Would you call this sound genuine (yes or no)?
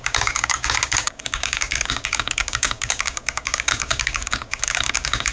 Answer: no